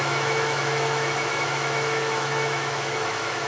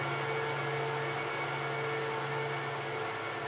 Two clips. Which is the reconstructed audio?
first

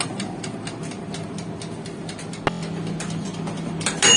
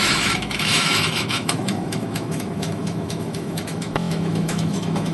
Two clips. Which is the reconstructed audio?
second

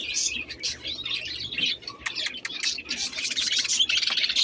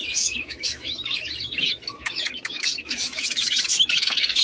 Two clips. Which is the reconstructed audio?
second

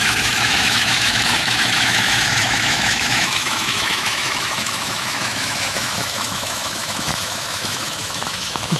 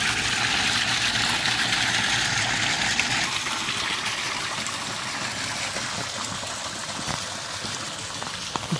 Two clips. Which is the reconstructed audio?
first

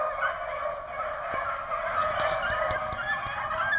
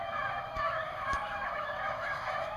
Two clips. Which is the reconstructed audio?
second